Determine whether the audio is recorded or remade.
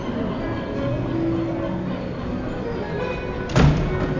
recorded